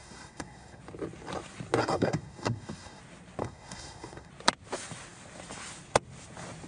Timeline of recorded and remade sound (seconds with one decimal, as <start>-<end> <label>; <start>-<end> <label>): 0.0-0.8 remade; 0.8-1.8 recorded; 1.8-3.0 remade; 3.0-3.4 recorded; 3.4-4.3 remade; 4.3-6.7 recorded